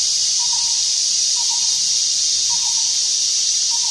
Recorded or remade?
remade